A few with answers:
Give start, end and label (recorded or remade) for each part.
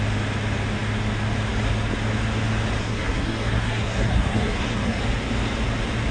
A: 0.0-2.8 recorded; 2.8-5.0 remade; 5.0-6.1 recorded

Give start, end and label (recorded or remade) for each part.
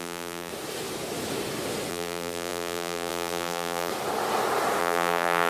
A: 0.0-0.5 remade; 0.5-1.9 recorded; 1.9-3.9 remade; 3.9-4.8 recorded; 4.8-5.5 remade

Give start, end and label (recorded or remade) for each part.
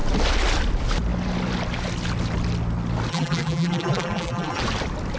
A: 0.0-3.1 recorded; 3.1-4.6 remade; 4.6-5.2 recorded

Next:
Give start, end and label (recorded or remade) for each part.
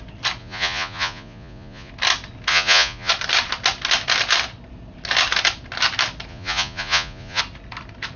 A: 0.0-0.4 recorded; 0.4-1.9 remade; 1.9-2.5 recorded; 2.5-3.1 remade; 3.1-6.3 recorded; 6.3-7.4 remade; 7.4-8.2 recorded